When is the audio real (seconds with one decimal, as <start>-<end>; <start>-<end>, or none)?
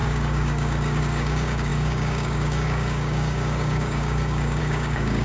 none